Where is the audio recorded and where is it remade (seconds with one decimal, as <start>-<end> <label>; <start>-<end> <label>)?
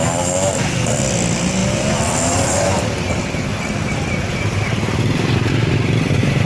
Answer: 0.0-3.5 remade; 3.5-4.3 recorded; 4.3-6.5 remade